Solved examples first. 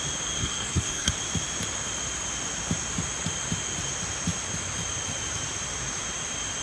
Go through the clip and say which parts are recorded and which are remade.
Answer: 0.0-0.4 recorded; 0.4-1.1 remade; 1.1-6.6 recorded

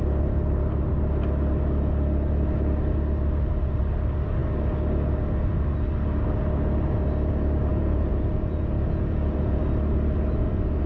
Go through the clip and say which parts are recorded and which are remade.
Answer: 0.0-7.7 recorded; 7.7-9.6 remade; 9.6-10.9 recorded

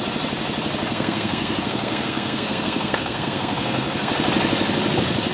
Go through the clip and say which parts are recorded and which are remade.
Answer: 0.0-0.9 recorded; 0.9-4.1 remade; 4.1-5.3 recorded